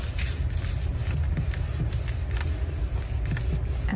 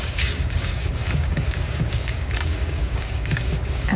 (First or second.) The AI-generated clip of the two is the second